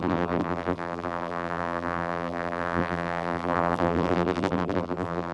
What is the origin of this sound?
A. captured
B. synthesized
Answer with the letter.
B